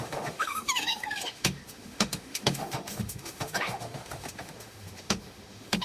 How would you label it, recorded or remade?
remade